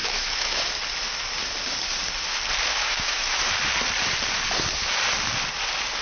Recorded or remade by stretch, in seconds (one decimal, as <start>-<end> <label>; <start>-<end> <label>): 0.0-0.6 remade; 0.6-2.7 recorded; 2.7-3.4 remade; 3.4-6.0 recorded